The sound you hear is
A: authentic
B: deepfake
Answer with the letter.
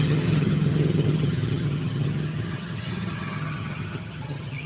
B